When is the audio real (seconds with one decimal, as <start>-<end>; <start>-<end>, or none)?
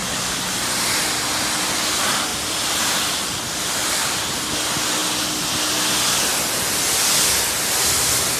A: 0.0-2.3; 4.4-8.4